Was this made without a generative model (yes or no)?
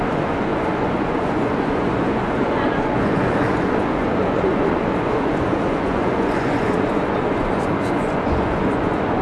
no